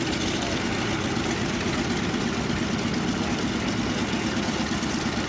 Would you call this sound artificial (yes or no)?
no